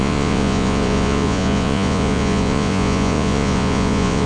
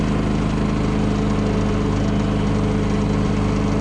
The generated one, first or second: first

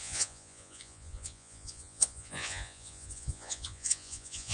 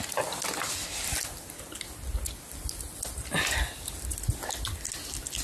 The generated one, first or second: first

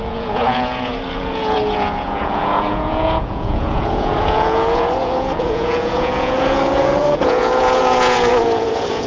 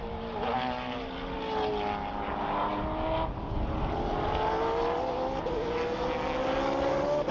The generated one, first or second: first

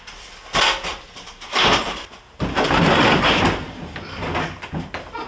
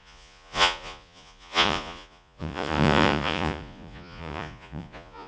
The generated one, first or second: second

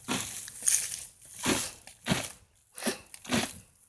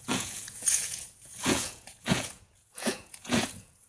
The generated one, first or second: second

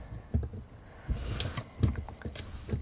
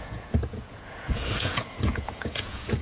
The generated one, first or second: second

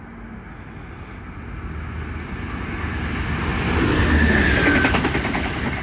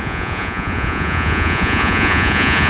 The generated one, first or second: second